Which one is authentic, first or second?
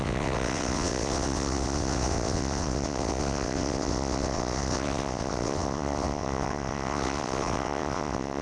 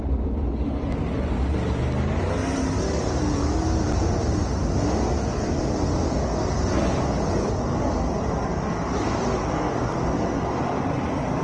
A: second